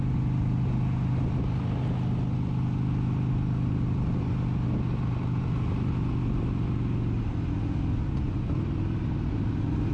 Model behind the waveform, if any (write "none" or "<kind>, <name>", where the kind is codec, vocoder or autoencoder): none